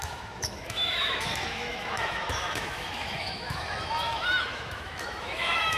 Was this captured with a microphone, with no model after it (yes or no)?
no